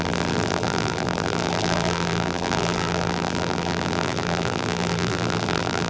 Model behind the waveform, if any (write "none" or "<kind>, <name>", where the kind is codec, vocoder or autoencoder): vocoder, BigVGAN v2